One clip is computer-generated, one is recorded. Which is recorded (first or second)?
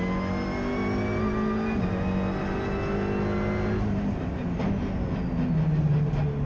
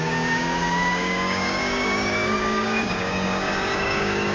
first